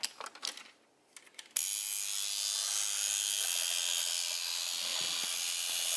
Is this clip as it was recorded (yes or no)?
yes